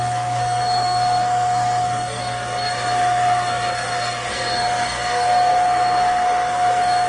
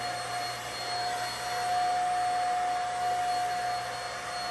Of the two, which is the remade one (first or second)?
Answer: first